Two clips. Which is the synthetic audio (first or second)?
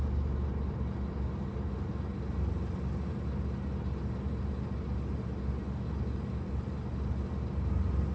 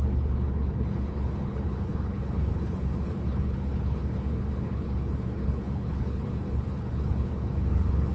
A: second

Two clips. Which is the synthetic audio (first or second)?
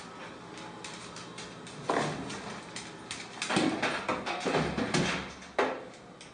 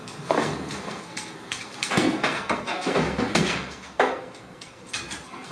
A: second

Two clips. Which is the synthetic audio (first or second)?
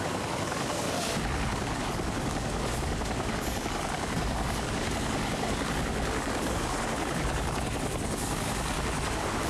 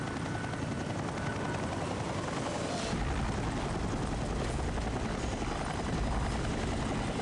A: first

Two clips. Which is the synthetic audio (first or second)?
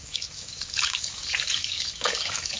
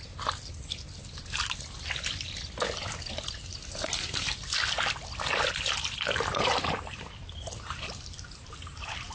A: first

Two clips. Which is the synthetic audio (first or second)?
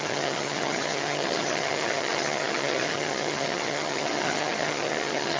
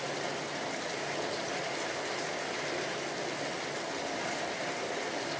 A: first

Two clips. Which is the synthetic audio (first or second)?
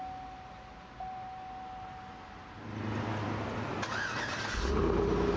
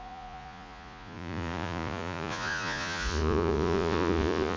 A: second